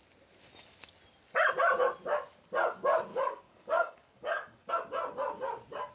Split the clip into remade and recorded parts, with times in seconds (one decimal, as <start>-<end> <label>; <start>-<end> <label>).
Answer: 0.0-3.1 recorded; 3.1-4.7 remade; 4.7-5.9 recorded